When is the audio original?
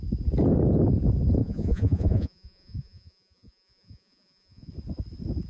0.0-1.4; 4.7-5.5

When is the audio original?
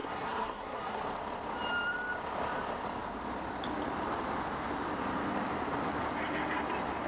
1.0-7.1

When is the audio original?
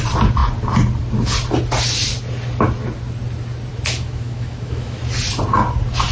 0.0-3.7; 5.0-6.1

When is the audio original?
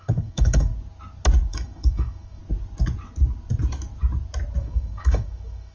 0.7-1.5; 2.4-4.6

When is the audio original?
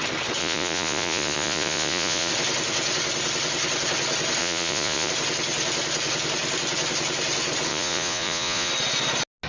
0.0-0.4; 2.3-4.4; 5.1-7.7; 8.7-9.5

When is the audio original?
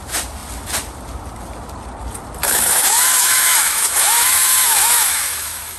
0.0-2.4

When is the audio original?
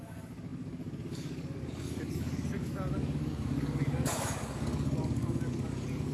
none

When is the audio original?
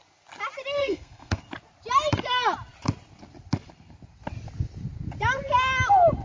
0.0-0.8; 1.4-6.2